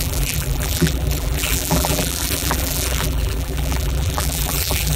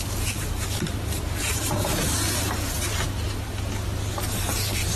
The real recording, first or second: second